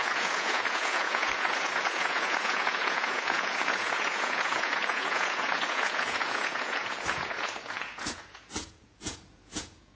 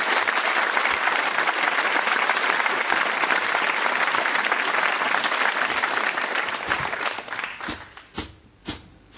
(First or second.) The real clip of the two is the second